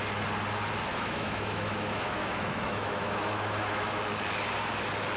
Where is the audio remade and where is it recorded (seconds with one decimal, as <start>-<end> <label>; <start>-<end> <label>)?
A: 0.0-0.9 recorded; 0.9-4.0 remade; 4.0-5.2 recorded